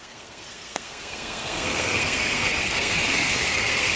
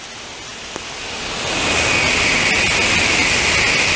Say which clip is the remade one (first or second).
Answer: first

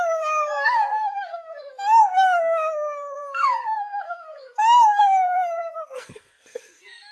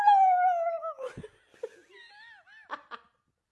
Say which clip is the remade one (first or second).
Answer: first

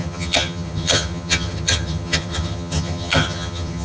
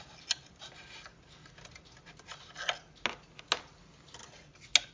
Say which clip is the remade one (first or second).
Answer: first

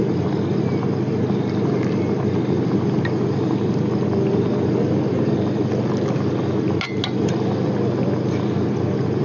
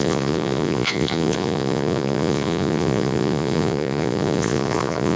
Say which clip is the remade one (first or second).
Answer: second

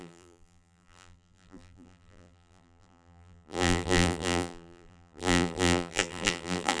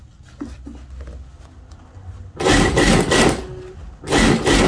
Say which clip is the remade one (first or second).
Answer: first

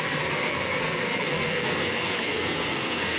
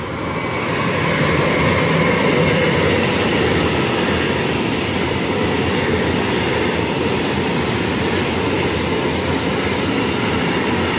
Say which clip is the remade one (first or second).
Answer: first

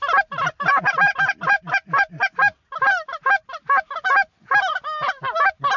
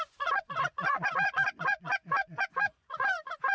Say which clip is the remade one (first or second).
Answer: second